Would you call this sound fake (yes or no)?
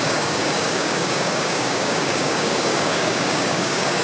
yes